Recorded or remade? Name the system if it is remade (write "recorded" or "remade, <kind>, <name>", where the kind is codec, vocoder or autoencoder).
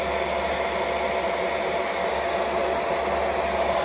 recorded